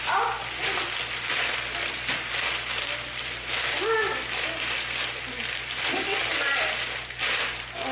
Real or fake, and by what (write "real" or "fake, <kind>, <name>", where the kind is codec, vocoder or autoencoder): real